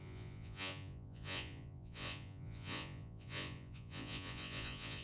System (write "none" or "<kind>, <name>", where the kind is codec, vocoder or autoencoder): vocoder, Vocos